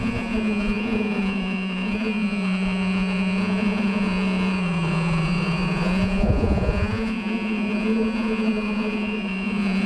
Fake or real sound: fake